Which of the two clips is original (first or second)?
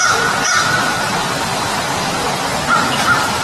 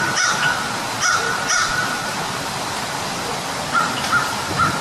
first